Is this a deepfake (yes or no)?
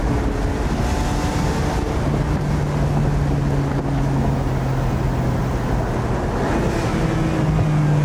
no